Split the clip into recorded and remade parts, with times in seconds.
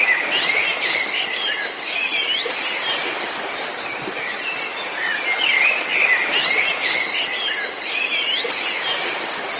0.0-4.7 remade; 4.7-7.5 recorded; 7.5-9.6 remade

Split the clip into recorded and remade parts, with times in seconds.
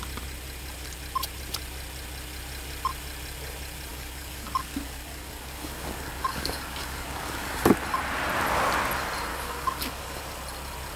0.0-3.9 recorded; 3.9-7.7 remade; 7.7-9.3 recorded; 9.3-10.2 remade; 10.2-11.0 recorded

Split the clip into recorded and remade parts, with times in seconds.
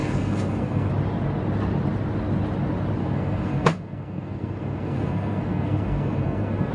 0.0-0.9 remade; 0.9-3.0 recorded; 3.0-6.7 remade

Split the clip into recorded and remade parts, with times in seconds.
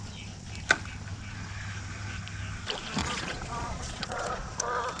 0.0-3.0 recorded; 3.0-4.6 remade; 4.6-5.0 recorded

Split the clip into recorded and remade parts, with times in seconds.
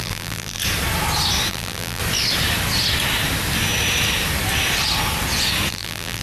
0.0-0.6 remade; 0.6-1.5 recorded; 1.5-2.0 remade; 2.0-5.7 recorded; 5.7-6.2 remade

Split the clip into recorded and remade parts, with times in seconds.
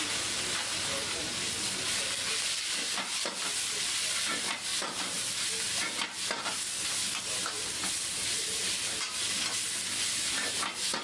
0.0-0.7 recorded; 0.7-1.2 remade; 1.2-4.7 recorded; 4.7-5.4 remade; 5.4-11.0 recorded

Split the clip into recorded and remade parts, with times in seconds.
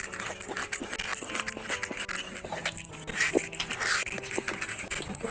0.0-5.3 recorded